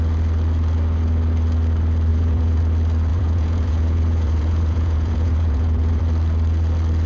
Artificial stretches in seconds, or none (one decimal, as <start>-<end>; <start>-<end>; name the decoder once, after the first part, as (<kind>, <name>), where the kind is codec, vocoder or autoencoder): 2.1-2.6 (vocoder, Vocos); 3.1-6.0